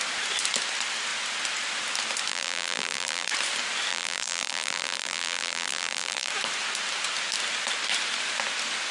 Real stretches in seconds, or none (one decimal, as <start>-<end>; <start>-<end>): 0.0-2.3; 3.3-3.9; 6.3-8.9